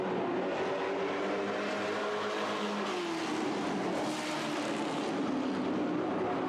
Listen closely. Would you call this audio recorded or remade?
recorded